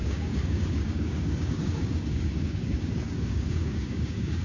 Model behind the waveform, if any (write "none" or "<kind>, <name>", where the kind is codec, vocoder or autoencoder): codec, DAC